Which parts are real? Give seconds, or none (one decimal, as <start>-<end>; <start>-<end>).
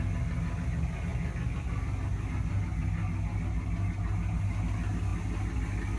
0.0-6.0